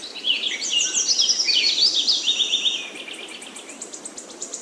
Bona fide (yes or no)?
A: yes